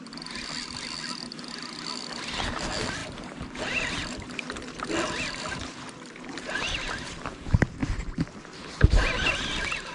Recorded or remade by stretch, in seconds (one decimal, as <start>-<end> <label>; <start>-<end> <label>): 0.0-9.9 recorded